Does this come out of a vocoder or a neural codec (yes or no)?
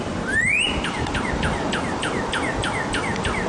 no